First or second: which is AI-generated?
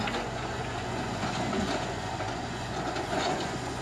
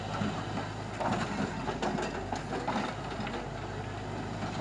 first